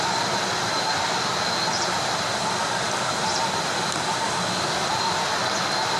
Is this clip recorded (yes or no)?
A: yes